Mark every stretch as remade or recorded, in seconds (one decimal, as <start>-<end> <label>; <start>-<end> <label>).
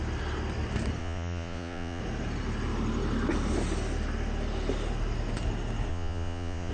0.0-1.0 recorded; 1.0-2.0 remade; 2.0-5.9 recorded; 5.9-6.7 remade